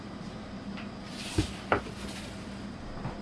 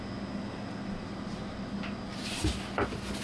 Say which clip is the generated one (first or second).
first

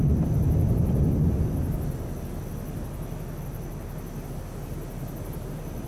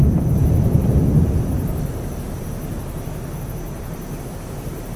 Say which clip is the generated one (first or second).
second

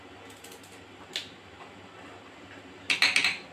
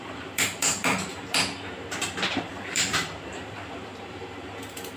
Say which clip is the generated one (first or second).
second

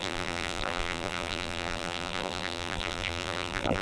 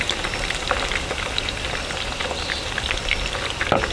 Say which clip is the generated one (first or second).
first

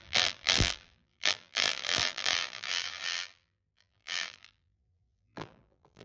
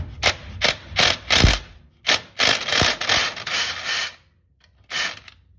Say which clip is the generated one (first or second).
first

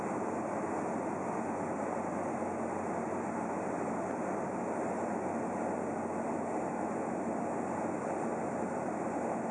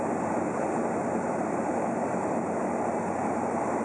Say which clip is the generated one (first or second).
second